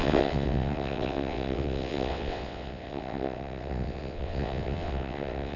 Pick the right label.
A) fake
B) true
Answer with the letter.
A